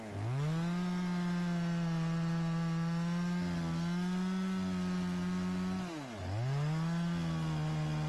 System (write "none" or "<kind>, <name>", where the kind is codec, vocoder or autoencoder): none